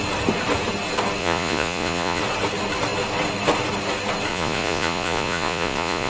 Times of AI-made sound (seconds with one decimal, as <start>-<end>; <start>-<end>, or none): 1.2-2.2; 4.3-6.1